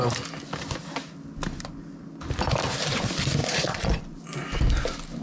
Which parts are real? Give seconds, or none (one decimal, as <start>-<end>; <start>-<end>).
0.0-3.4; 4.0-5.2